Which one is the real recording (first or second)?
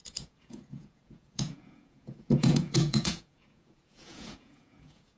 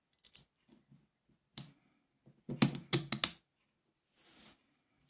second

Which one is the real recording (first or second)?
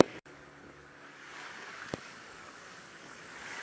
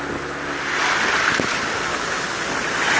second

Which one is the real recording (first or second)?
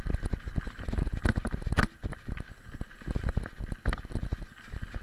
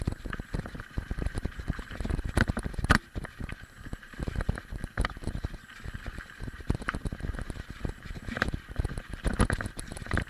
first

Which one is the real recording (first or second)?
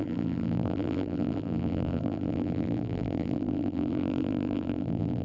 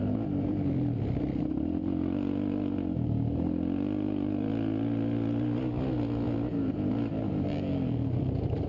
second